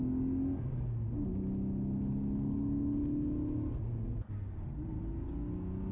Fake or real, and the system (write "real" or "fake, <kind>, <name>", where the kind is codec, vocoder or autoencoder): real